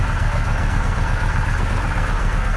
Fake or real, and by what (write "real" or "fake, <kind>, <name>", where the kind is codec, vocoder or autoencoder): fake, codec, SNAC